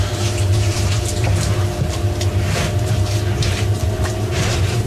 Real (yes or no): no